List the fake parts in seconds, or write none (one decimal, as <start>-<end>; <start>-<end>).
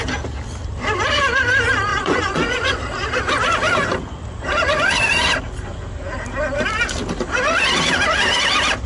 1.9-2.8